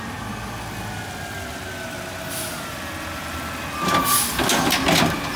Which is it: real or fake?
real